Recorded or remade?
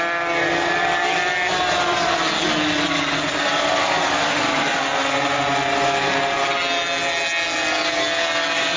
recorded